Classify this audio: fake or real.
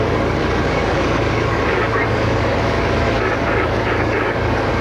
fake